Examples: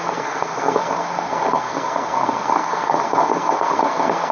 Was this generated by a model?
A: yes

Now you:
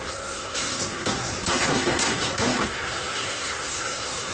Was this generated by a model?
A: yes